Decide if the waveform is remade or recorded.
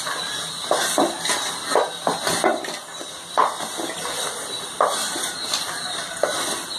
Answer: recorded